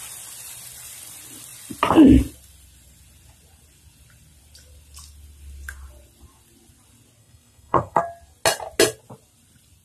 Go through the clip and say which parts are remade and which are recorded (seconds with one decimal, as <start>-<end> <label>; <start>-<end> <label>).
0.0-7.2 recorded; 7.2-8.0 remade; 8.0-9.8 recorded